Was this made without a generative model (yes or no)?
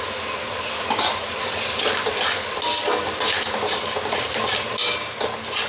yes